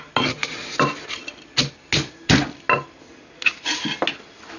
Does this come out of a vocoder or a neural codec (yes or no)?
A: no